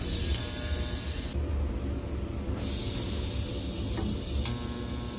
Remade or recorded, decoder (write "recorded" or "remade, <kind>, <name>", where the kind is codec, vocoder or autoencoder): recorded